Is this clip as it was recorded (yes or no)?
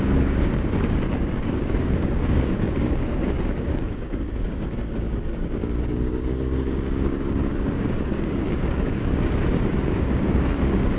no